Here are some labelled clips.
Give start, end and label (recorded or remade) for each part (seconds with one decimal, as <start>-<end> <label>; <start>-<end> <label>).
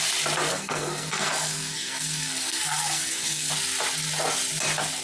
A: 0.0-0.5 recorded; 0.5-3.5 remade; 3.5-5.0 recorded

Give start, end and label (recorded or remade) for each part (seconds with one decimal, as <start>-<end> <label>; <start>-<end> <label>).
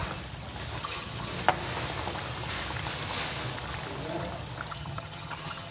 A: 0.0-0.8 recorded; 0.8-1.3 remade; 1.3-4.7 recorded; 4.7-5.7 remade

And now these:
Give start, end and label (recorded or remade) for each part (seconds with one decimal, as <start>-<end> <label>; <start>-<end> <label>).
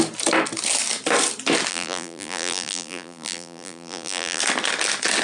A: 0.0-1.7 recorded; 1.7-4.4 remade; 4.4-5.2 recorded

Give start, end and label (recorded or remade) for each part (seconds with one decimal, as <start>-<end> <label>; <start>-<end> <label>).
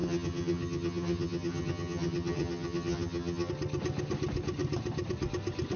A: 0.0-3.5 remade; 3.5-5.8 recorded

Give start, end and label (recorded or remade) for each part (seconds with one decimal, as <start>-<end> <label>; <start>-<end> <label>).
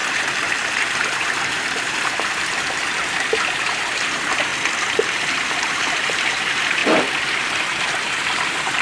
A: 0.0-4.5 remade; 4.5-5.7 recorded; 5.7-6.8 remade; 6.8-7.3 recorded; 7.3-8.8 remade